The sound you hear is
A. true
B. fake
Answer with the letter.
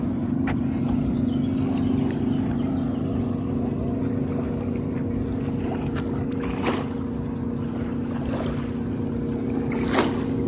A